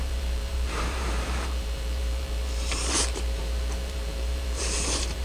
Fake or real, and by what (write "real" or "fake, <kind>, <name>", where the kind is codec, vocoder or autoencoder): fake, vocoder, BigVGAN v2